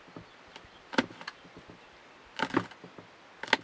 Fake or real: real